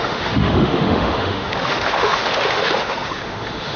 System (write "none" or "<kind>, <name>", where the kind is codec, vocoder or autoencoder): autoencoder, DAC-VAE